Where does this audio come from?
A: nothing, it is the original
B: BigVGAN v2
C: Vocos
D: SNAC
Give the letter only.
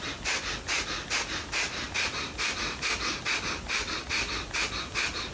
A